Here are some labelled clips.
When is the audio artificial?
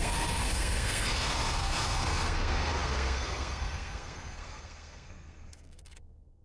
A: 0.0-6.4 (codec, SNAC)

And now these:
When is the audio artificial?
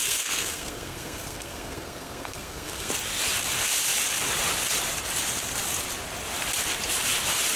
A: 0.0-2.9 (codec, SNAC)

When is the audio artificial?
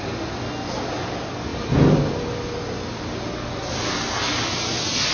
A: none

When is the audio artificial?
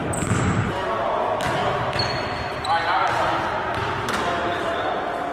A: none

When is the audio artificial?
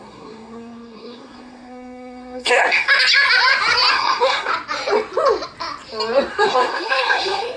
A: 0.0-2.9 (codec, SNAC); 3.9-4.5; 6.3-7.6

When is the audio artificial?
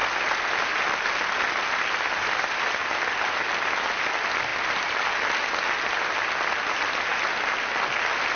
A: none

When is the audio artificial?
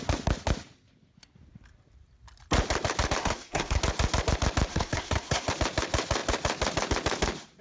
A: 3.2-3.8 (codec, SNAC); 4.7-5.5